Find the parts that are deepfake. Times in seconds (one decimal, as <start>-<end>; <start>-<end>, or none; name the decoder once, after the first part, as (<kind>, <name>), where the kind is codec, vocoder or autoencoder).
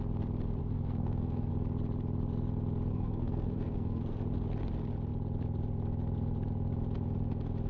0.6-1.5 (codec, SNAC); 2.9-4.2